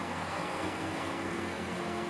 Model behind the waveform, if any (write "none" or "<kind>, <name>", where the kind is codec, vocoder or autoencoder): codec, SNAC